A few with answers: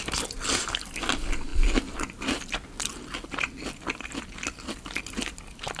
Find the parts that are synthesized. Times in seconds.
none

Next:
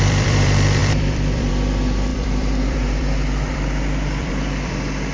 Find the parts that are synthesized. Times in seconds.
0.0-5.1 (vocoder, BigVGAN v2)

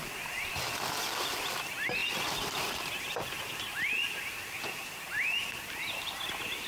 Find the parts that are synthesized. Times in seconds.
2.0-6.0 (vocoder, BigVGAN v2)

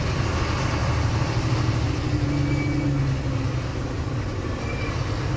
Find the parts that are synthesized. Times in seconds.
3.7-4.9 (vocoder, BigVGAN v2)

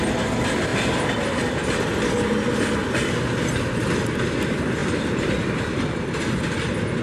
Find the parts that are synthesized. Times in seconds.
0.7-1.4 (vocoder, BigVGAN v2); 2.8-3.4; 4.8-5.6

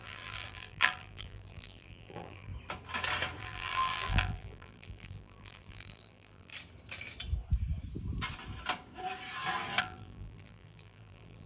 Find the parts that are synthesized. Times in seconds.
0.0-2.5 (vocoder, BigVGAN v2); 3.4-6.5; 9.8-11.5

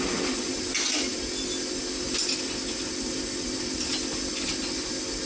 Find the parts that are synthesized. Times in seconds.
none